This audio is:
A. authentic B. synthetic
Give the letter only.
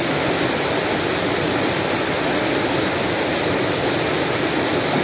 A